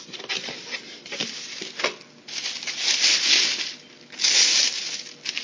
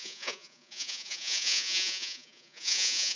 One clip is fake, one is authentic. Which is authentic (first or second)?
first